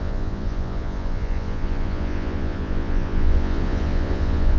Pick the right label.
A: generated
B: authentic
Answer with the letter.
A